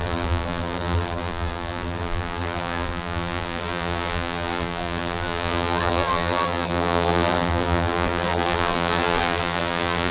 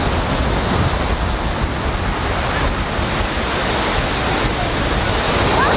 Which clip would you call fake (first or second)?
first